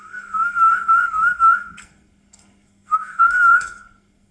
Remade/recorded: remade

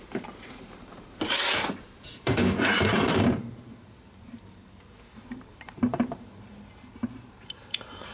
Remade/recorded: remade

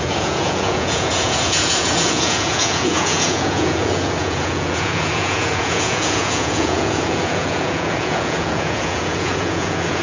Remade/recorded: remade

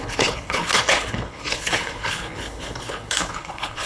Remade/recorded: remade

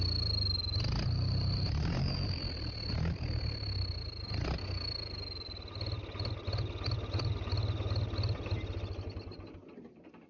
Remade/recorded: recorded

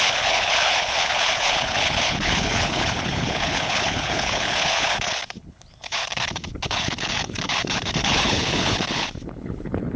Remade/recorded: remade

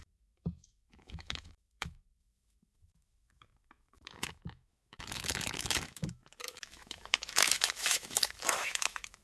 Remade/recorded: remade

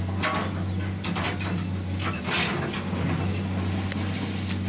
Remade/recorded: recorded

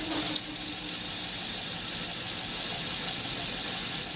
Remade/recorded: recorded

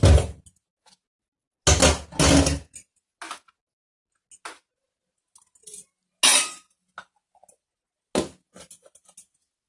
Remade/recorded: recorded